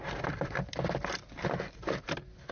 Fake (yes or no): no